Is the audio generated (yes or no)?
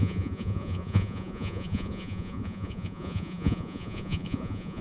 yes